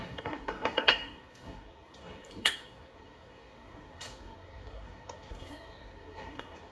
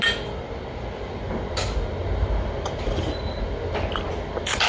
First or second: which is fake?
first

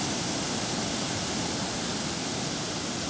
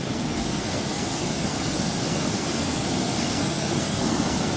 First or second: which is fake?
second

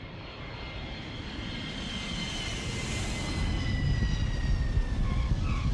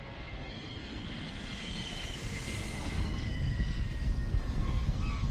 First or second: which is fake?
second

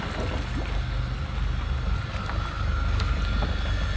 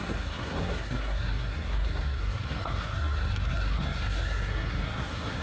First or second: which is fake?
second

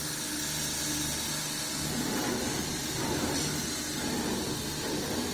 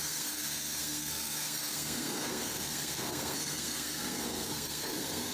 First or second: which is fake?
second